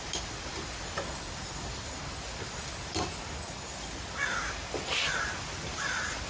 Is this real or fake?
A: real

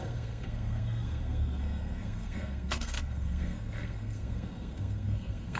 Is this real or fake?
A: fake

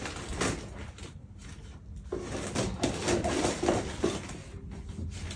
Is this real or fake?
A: real